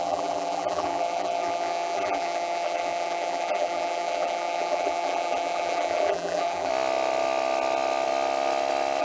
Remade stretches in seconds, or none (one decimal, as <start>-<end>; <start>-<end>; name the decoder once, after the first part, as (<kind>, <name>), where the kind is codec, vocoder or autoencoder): 0.0-6.7 (vocoder, BigVGAN v2)